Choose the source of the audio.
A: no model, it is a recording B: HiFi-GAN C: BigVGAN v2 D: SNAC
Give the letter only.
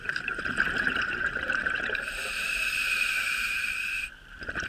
C